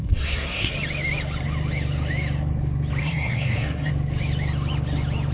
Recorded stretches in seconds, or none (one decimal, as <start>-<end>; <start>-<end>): 0.7-3.0; 3.9-5.3